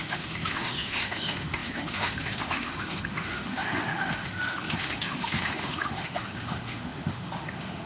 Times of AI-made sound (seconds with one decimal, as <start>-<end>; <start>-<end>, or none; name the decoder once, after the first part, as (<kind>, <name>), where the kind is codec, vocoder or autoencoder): 0.0-7.9 (autoencoder, DAC-VAE)